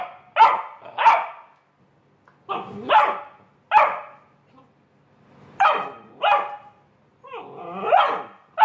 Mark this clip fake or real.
real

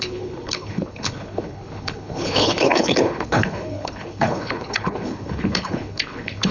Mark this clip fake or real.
fake